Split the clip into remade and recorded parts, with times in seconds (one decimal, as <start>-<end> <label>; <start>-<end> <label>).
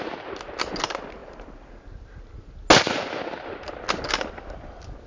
0.0-5.1 recorded